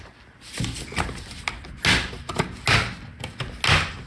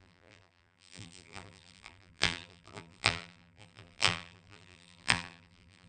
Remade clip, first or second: second